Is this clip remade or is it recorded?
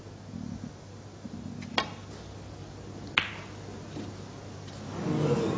recorded